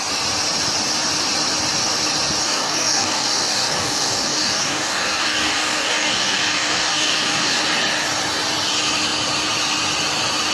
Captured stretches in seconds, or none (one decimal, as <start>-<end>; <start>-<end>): 0.0-2.4; 7.6-10.5